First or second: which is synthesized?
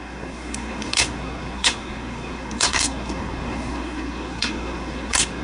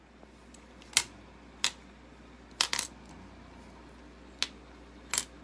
first